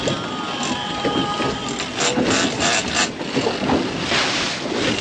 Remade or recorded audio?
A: recorded